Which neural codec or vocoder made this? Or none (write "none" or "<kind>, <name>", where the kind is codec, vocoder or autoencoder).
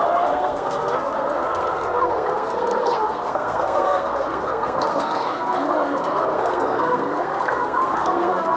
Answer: codec, SNAC